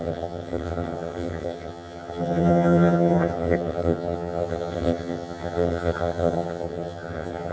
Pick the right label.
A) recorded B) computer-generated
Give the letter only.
B